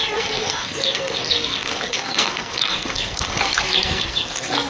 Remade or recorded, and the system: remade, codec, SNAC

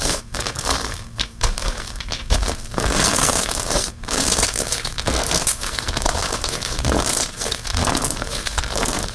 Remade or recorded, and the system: remade, codec, SNAC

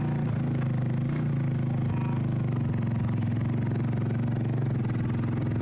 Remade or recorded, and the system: recorded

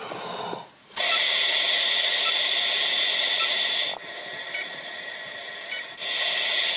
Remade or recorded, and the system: recorded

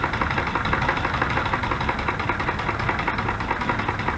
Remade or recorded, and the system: recorded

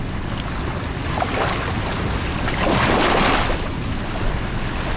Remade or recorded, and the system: recorded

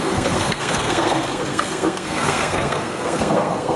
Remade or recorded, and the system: remade, codec, SNAC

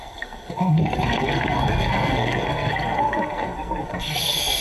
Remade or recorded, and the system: remade, codec, SNAC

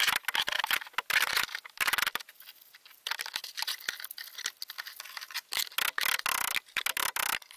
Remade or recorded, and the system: recorded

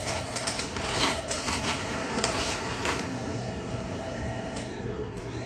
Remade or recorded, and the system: remade, codec, SNAC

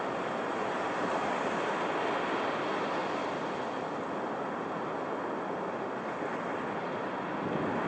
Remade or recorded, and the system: recorded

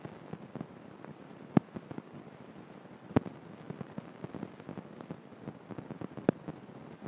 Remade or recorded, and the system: recorded